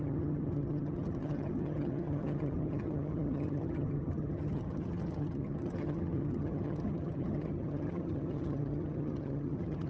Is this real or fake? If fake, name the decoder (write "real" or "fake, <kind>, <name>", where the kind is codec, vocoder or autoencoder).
fake, vocoder, HiFi-GAN